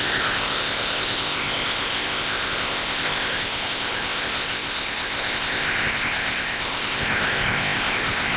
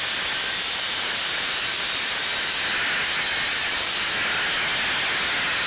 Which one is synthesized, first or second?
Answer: first